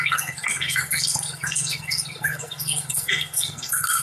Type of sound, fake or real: fake